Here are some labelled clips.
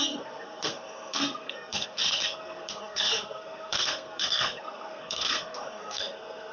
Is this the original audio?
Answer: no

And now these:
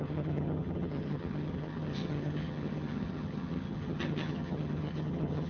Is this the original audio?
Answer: no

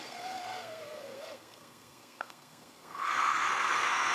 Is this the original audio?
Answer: no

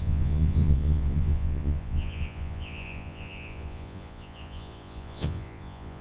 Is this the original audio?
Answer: no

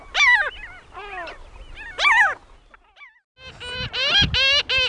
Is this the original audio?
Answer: yes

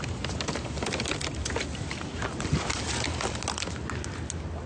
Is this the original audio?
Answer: yes